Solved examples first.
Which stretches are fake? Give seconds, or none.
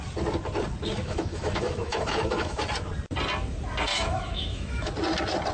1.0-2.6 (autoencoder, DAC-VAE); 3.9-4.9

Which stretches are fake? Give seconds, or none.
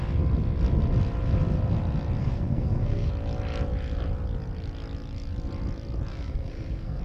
2.2-3.1 (codec, SNAC); 6.1-7.0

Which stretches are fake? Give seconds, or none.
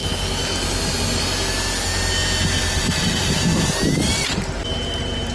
2.8-3.5 (vocoder, BigVGAN v2); 4.1-5.3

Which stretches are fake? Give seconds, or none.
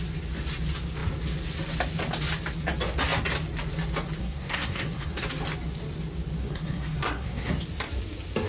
4.2-5.2 (codec, SNAC); 6.4-7.5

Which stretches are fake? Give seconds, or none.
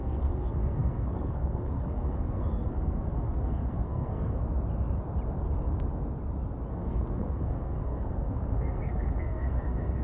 0.0-4.4 (codec, SNAC); 6.7-10.0